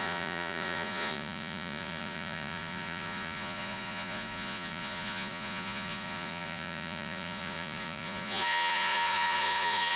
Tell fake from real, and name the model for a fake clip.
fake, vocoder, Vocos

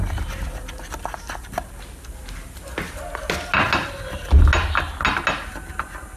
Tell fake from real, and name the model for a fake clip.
real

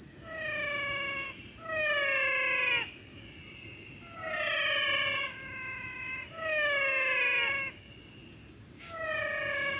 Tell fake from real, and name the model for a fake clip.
real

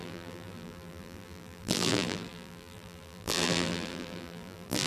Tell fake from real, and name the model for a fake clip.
fake, vocoder, BigVGAN v2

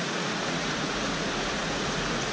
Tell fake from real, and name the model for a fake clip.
fake, vocoder, Vocos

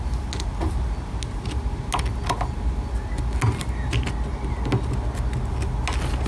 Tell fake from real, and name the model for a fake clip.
real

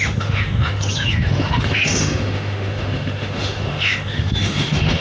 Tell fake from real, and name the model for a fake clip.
fake, autoencoder, DAC-VAE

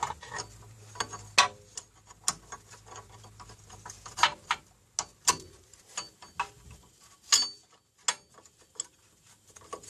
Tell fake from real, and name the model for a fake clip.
real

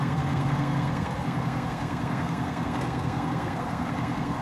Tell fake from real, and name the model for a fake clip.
fake, codec, SNAC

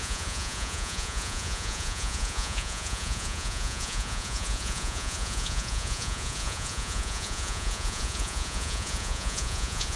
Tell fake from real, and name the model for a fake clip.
fake, vocoder, Vocos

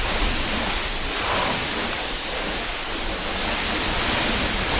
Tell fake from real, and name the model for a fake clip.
real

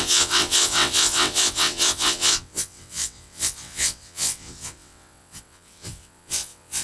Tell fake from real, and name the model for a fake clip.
fake, vocoder, WaveNeXt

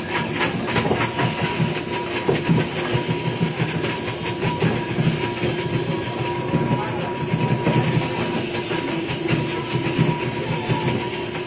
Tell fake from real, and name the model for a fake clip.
real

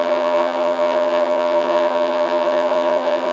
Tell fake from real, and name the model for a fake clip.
fake, vocoder, HiFi-GAN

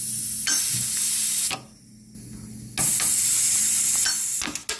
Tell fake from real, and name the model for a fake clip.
real